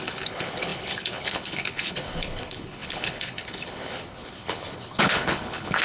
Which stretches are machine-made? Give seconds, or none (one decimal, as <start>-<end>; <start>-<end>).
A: 0.0-5.8